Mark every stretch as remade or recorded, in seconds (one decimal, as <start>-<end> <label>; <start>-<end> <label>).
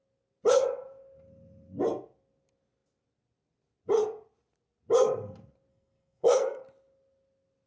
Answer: 0.0-5.7 recorded; 5.7-6.6 remade; 6.6-7.7 recorded